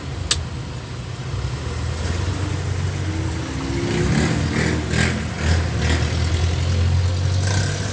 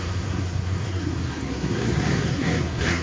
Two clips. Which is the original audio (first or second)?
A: first